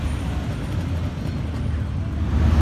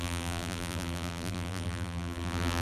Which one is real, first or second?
first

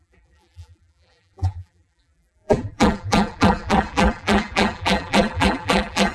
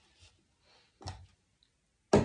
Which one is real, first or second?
second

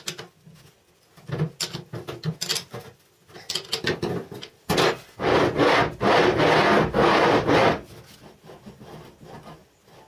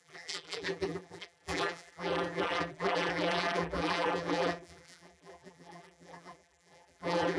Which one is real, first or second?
first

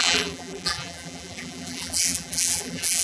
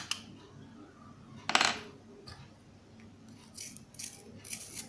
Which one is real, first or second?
second